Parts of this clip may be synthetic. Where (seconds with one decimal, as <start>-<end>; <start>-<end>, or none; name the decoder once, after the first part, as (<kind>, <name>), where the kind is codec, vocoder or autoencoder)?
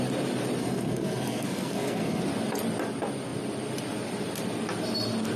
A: 0.6-2.2 (codec, SNAC)